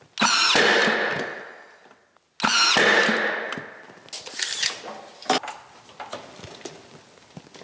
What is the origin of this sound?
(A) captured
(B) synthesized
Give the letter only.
A